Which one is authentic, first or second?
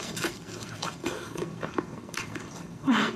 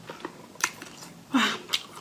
second